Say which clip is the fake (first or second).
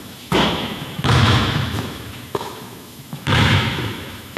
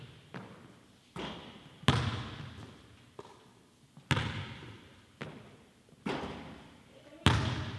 first